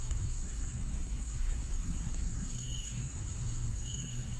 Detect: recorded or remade remade